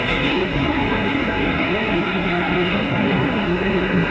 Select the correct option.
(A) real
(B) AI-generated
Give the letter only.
B